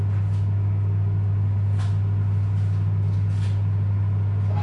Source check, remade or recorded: recorded